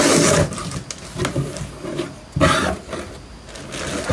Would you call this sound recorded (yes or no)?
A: yes